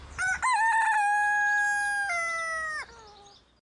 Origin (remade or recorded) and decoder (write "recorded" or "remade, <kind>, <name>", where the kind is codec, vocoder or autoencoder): recorded